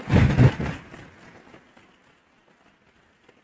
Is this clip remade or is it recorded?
recorded